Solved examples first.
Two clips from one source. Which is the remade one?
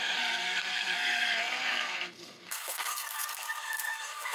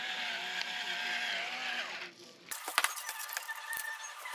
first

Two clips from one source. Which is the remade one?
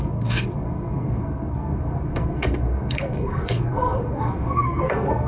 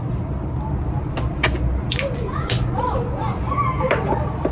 first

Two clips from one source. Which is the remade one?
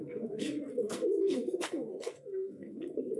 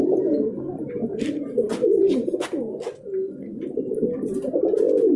first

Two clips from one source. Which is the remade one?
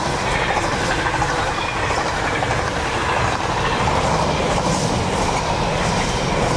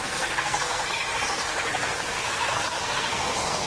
second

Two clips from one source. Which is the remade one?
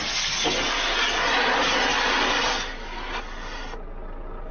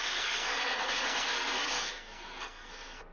second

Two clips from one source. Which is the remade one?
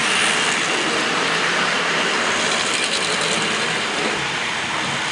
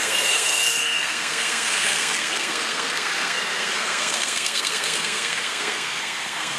second